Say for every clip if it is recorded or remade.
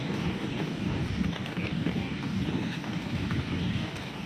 remade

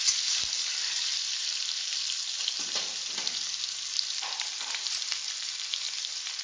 recorded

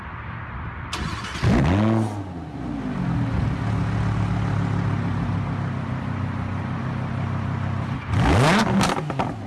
recorded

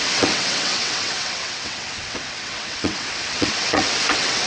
remade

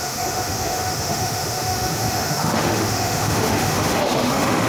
remade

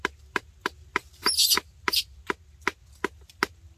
recorded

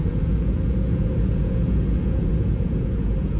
remade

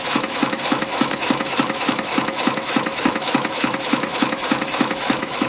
remade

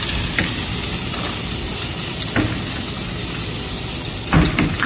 recorded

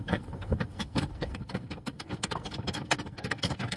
remade